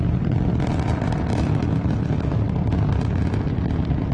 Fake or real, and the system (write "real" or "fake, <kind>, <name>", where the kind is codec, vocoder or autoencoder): fake, vocoder, BigVGAN v2